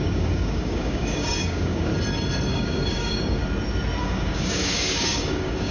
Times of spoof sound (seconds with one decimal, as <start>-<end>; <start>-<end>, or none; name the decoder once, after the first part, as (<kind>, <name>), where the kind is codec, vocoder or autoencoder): 0.0-1.9 (codec, DAC); 2.5-3.4; 4.0-5.7

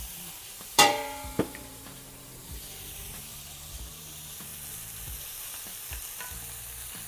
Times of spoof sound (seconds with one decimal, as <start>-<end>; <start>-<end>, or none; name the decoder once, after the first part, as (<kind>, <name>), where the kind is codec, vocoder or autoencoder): 0.0-4.5 (vocoder, BigVGAN v2); 5.2-5.7

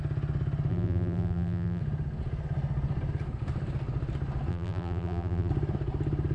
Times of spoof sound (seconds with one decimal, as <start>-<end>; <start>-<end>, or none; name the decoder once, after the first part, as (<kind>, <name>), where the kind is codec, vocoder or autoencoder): 0.7-1.8 (vocoder, BigVGAN v2); 4.5-5.5